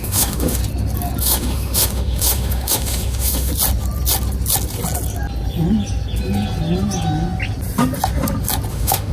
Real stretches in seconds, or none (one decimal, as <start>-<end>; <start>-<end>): 0.6-1.2; 3.5-8.7